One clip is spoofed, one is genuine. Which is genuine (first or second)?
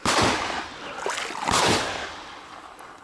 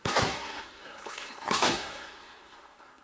first